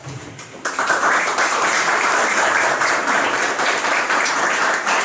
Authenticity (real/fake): fake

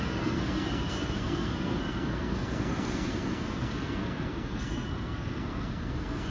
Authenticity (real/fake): fake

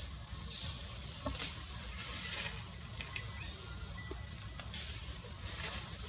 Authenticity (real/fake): real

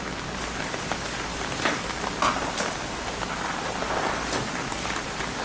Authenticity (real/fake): real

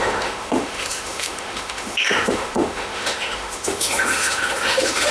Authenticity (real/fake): fake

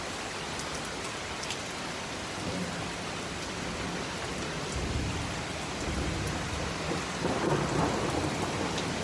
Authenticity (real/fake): real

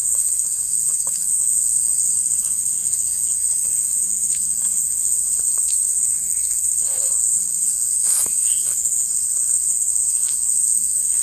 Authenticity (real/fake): fake